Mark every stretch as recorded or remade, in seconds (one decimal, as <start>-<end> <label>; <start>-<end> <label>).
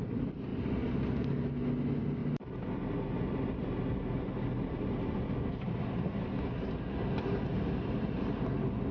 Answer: 0.0-8.9 recorded